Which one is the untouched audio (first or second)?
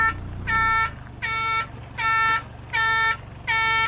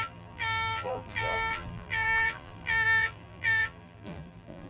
first